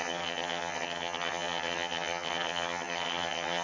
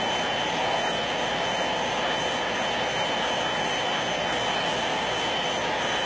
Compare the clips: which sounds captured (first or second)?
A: second